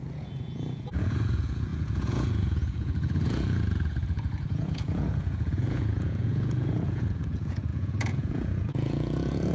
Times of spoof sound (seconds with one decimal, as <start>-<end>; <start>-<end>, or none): 0.0-9.5